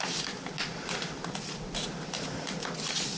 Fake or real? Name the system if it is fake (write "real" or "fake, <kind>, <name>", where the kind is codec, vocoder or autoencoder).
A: real